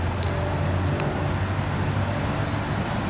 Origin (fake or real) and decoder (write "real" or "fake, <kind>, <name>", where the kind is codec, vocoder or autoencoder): real